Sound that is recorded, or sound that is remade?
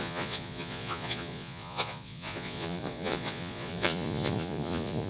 remade